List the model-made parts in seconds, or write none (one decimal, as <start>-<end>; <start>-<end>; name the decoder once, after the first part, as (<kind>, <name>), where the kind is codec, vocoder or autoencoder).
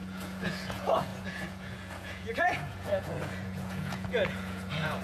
0.0-5.0 (vocoder, Vocos)